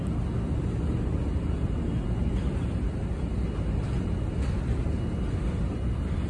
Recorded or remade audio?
recorded